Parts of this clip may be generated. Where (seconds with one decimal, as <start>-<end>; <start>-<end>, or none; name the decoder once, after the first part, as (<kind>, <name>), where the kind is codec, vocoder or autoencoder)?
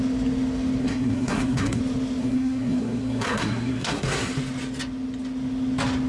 0.8-1.8 (codec, SNAC); 2.2-4.3